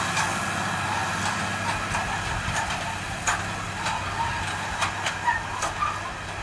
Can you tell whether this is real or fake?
real